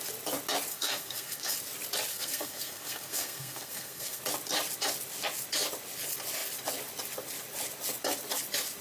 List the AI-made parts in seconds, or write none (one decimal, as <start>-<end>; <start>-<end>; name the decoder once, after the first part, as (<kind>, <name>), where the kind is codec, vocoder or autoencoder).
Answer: 0.7-1.6 (codec, SNAC); 2.1-4.2